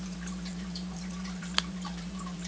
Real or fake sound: fake